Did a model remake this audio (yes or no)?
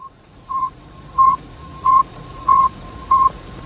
yes